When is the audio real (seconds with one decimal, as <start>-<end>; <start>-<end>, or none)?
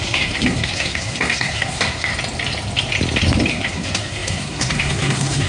2.1-3.5